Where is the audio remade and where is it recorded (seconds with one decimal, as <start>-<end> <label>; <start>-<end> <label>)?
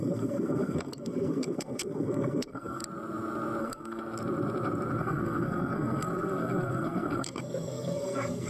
0.0-2.8 remade; 2.8-3.6 recorded; 3.6-4.0 remade; 4.0-5.0 recorded; 5.0-8.5 remade